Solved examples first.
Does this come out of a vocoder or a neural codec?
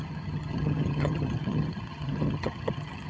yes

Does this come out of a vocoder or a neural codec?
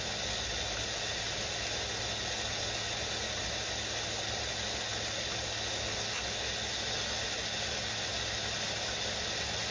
no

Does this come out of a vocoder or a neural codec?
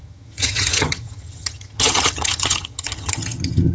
yes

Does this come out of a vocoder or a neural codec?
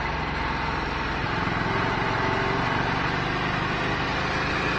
no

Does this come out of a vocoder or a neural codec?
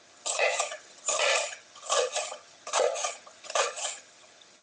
yes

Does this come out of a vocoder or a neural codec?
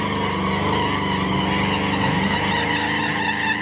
no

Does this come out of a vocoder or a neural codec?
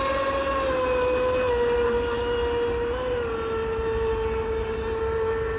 no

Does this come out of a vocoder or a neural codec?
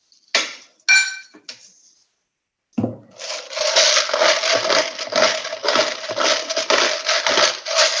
no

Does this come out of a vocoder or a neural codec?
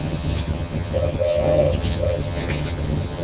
yes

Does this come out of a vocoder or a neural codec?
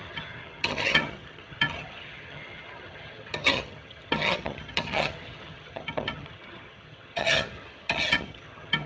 yes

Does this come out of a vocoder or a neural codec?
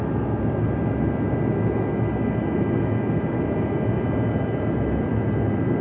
no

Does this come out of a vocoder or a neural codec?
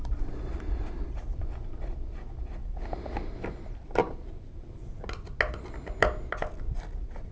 no